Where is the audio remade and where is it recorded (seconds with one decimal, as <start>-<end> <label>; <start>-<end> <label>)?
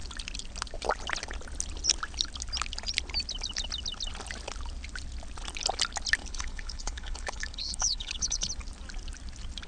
0.0-6.2 recorded; 6.2-8.5 remade; 8.5-9.7 recorded